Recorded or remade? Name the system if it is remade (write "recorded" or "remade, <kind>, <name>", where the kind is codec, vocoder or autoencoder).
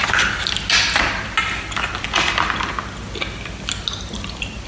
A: recorded